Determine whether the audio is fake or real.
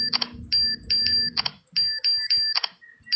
real